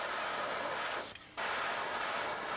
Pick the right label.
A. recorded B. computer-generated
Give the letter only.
A